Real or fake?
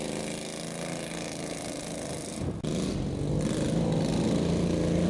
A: real